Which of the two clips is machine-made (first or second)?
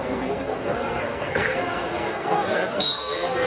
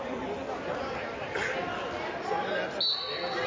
first